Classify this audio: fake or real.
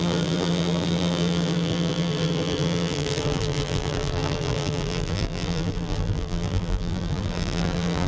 fake